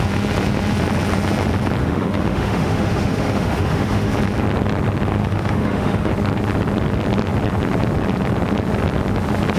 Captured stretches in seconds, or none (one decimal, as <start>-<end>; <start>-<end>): 0.0-1.8; 4.1-5.2; 6.1-9.6